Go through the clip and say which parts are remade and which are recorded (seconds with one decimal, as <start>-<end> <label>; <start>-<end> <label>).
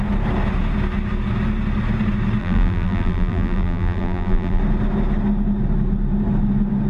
0.0-2.4 recorded; 2.4-4.6 remade; 4.6-6.9 recorded